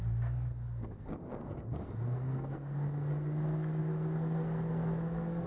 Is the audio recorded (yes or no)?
no